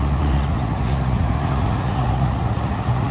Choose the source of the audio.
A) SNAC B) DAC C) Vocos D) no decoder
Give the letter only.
C